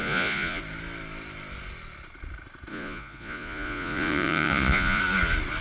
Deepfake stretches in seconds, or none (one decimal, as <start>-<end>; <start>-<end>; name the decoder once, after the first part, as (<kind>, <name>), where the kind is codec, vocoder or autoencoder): 0.0-0.6 (vocoder, Vocos); 2.7-5.0